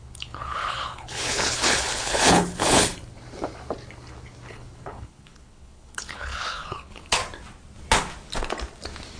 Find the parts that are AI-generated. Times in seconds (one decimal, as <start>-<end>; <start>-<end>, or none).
0.0-2.9; 4.5-7.2